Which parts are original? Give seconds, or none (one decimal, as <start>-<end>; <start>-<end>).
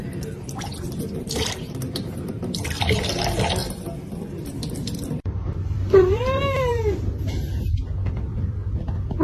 none